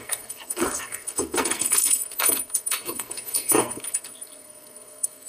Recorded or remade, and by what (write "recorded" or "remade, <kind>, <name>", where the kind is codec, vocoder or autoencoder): remade, codec, SNAC